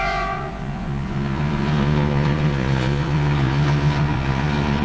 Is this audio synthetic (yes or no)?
yes